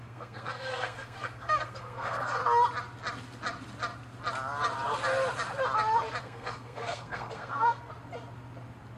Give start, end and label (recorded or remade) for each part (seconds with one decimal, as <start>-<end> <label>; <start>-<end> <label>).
0.0-2.4 remade; 2.4-6.2 recorded; 6.2-7.9 remade; 7.9-9.0 recorded